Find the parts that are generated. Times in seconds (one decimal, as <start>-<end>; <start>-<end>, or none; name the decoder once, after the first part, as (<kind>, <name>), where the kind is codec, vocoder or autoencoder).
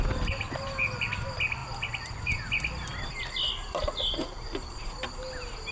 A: 1.6-2.2 (vocoder, BigVGAN v2)